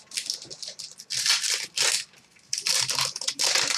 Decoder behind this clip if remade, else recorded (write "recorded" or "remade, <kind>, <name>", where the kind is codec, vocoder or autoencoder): recorded